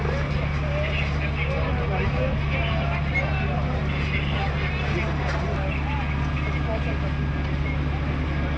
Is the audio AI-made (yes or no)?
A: no